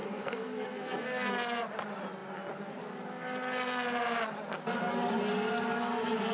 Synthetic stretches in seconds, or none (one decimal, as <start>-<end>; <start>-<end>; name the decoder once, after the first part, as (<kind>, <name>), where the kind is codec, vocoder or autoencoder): 0.0-1.3 (codec, SNAC)

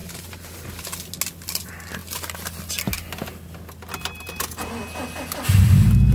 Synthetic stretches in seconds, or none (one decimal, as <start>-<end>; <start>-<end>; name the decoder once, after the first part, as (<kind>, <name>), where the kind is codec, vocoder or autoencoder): 0.0-0.8 (vocoder, BigVGAN v2)

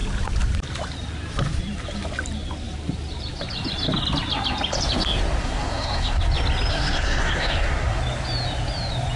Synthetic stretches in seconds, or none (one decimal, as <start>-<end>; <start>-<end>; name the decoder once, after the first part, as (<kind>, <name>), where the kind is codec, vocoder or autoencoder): 5.4-6.2 (codec, SNAC); 6.7-8.0

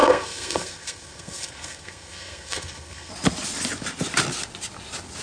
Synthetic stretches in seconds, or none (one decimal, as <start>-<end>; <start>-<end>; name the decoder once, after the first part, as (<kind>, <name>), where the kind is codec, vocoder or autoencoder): 0.0-3.1 (codec, SNAC)

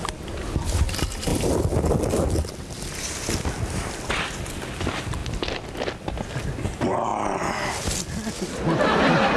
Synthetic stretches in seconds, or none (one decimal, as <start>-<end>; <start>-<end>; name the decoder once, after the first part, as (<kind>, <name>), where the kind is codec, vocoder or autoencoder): none

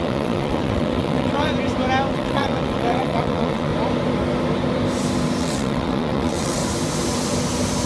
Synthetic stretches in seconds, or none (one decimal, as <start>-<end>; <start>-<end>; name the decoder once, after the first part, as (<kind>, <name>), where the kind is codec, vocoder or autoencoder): 0.0-1.5 (vocoder, WaveNeXt); 2.1-3.7; 5.4-6.6

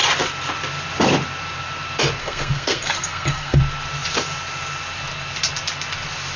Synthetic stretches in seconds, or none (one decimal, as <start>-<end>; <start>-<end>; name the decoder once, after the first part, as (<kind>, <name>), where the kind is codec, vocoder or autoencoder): 2.2-3.6 (codec, SNAC)